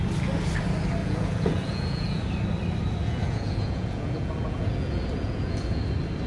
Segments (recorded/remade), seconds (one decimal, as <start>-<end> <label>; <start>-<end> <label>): 0.0-1.0 recorded; 1.0-2.2 remade; 2.2-3.0 recorded; 3.0-5.8 remade; 5.8-6.3 recorded